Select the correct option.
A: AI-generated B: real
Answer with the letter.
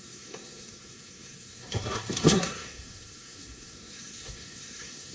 A